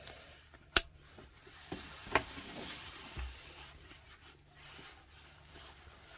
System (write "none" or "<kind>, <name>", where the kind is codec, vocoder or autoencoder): vocoder, BigVGAN v2